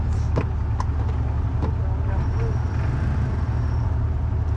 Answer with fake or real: real